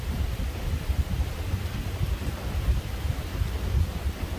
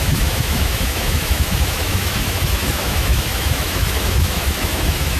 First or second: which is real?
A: first